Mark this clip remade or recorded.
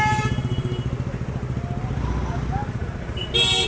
recorded